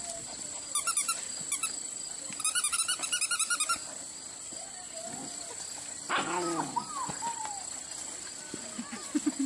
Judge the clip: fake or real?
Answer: real